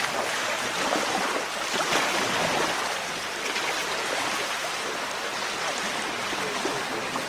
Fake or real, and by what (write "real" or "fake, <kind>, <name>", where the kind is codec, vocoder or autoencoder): fake, vocoder, BigVGAN v2